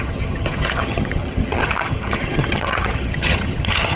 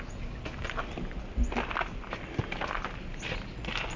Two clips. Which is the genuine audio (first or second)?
second